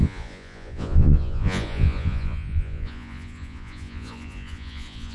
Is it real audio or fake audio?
fake